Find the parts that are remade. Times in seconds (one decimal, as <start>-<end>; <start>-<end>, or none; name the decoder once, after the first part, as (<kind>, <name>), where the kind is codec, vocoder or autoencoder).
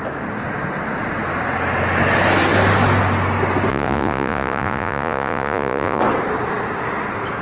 3.7-6.0 (vocoder, Vocos)